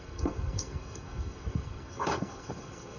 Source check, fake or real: fake